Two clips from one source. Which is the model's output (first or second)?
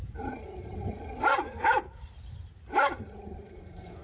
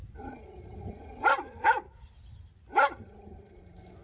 first